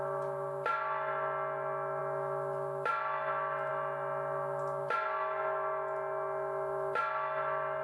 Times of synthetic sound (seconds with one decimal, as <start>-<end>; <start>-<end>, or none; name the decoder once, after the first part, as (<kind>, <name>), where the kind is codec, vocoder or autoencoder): none